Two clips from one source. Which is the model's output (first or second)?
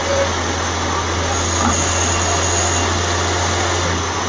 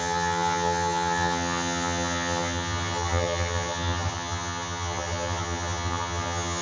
second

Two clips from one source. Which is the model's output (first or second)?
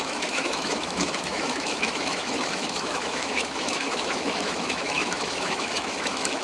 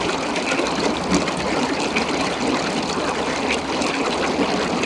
first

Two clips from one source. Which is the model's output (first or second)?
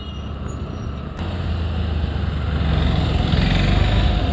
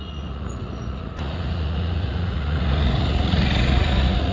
second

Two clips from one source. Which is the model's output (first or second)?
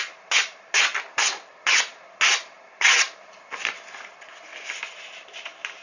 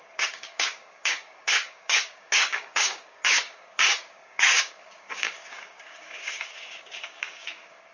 second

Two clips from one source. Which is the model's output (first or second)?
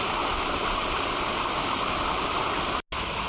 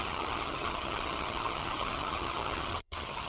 second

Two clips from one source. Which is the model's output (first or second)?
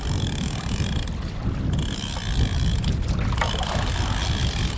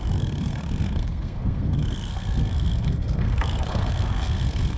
second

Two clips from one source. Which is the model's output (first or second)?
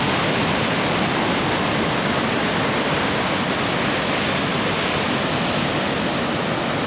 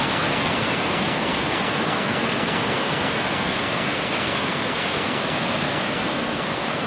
second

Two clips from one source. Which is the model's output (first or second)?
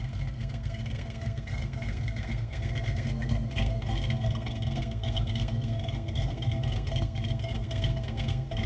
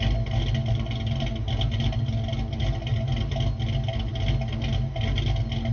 first